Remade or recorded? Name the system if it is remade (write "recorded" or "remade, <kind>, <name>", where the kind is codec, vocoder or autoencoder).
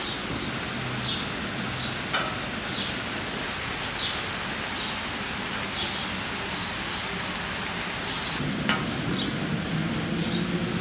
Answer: recorded